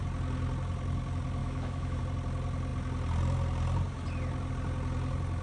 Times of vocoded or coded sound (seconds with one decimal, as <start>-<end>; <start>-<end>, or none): 1.4-2.0